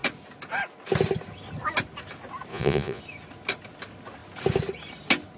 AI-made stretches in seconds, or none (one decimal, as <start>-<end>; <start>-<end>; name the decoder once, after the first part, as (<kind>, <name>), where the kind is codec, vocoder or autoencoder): 2.5-3.0 (vocoder, Vocos)